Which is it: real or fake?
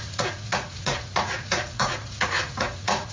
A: fake